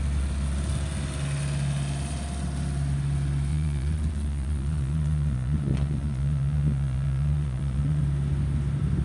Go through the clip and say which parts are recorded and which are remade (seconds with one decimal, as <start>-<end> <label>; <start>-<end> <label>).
0.0-3.5 recorded; 3.5-8.0 remade; 8.0-9.0 recorded